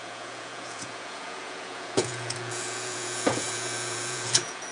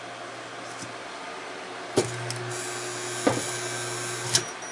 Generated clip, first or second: first